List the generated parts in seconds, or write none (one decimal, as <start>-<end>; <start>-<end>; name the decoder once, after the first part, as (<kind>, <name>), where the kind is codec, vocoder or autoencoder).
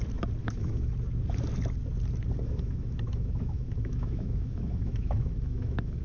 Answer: 0.4-0.9 (autoencoder, DAC-VAE); 2.4-6.0